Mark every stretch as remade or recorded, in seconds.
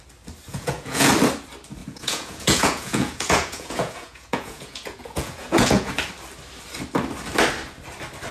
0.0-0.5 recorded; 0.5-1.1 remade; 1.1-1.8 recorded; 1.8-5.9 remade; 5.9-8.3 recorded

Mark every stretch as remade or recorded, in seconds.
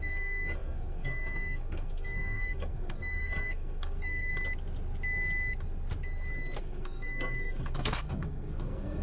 0.0-4.3 remade; 4.3-6.6 recorded; 6.6-9.0 remade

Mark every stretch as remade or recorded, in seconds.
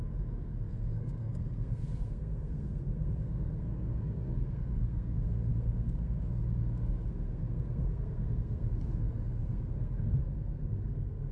0.0-11.3 remade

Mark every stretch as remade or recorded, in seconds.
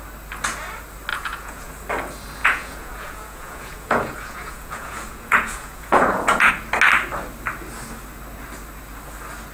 0.0-1.1 recorded; 1.1-1.7 remade; 1.7-2.4 recorded; 2.4-6.5 remade; 6.5-9.5 recorded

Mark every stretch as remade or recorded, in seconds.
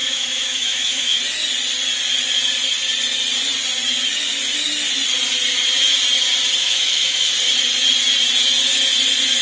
0.0-1.2 remade; 1.2-6.6 recorded; 6.6-7.3 remade; 7.3-9.4 recorded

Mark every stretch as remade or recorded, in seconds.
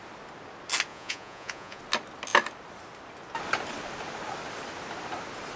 0.0-0.9 recorded; 0.9-1.8 remade; 1.8-5.6 recorded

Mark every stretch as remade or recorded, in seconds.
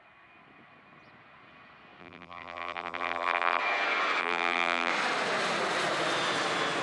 0.0-2.0 recorded; 2.0-3.6 remade; 3.6-4.2 recorded; 4.2-4.9 remade; 4.9-6.8 recorded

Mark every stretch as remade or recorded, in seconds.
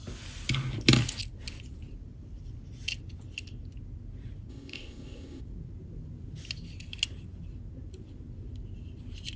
0.0-4.5 recorded; 4.5-5.4 remade; 5.4-9.4 recorded